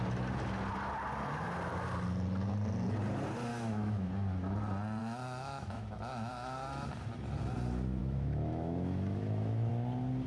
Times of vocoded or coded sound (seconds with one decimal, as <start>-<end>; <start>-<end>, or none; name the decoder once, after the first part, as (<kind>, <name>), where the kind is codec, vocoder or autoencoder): 3.5-4.1 (autoencoder, DAC-VAE); 5.0-6.3; 8.0-9.7